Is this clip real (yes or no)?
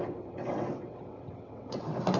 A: no